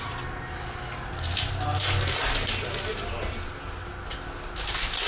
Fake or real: real